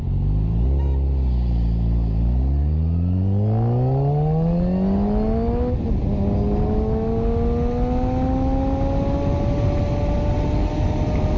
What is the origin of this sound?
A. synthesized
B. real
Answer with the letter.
B